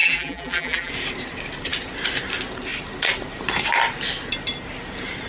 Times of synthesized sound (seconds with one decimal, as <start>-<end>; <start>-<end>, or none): 0.0-0.9

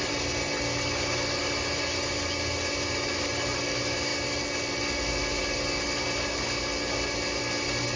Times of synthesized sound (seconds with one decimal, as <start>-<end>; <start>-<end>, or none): none

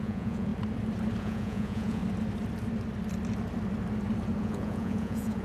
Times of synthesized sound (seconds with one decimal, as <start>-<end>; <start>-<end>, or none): 0.0-0.5; 1.2-2.0; 4.4-5.4